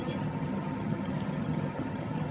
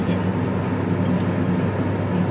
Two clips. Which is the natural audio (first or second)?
second